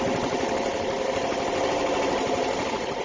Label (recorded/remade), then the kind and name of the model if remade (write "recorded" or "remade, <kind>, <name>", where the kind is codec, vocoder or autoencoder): recorded